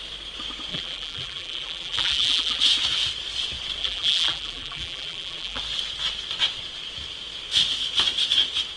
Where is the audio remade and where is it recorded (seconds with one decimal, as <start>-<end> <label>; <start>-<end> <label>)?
0.0-0.7 recorded; 0.7-2.6 remade; 2.6-3.8 recorded; 3.8-5.6 remade; 5.6-8.8 recorded